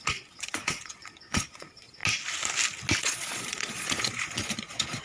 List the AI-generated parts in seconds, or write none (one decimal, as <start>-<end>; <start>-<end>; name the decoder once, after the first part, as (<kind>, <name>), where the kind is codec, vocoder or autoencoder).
0.0-2.0 (vocoder, Vocos); 3.0-5.0